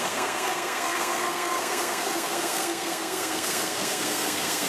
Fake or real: fake